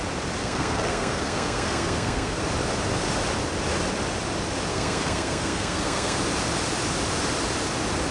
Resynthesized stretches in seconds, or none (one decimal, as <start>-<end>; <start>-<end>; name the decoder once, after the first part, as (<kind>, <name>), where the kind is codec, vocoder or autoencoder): 0.4-2.4 (codec, SNAC); 4.7-6.2